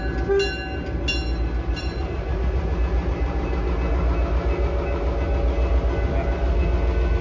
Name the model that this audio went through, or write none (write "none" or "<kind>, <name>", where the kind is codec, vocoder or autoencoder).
none